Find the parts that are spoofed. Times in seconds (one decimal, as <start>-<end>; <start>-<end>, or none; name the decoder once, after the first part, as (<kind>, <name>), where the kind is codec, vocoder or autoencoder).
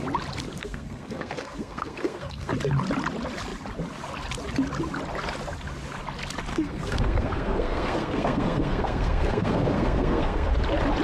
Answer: 0.6-2.5 (codec, SNAC); 6.5-10.5